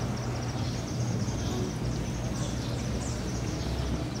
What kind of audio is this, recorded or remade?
recorded